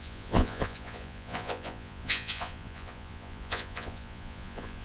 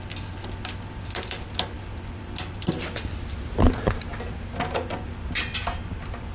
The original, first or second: second